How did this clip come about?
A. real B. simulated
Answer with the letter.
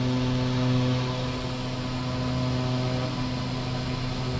A